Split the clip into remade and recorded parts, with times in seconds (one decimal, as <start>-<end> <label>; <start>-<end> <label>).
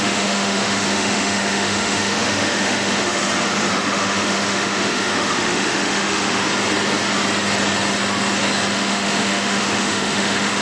0.0-3.2 remade; 3.2-3.7 recorded; 3.7-6.4 remade; 6.4-8.7 recorded; 8.7-10.6 remade